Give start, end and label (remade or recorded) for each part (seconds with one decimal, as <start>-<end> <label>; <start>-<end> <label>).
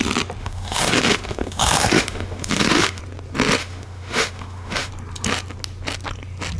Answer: 0.0-0.4 recorded; 0.4-3.0 remade; 3.0-3.6 recorded; 3.6-4.9 remade; 4.9-6.6 recorded